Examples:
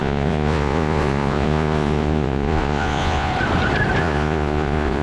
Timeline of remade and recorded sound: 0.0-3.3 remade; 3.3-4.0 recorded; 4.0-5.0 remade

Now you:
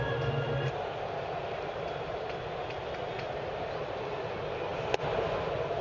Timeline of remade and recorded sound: 0.0-5.8 recorded

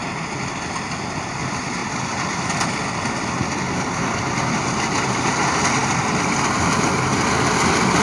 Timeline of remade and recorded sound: 0.0-8.0 recorded